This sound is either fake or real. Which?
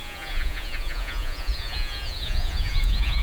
fake